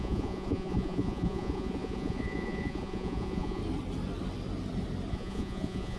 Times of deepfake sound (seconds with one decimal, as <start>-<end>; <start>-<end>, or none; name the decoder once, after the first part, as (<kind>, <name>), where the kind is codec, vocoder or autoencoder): 0.0-3.6 (vocoder, Vocos); 5.1-6.0